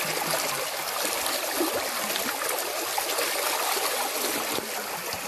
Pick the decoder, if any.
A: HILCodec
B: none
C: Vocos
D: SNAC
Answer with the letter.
B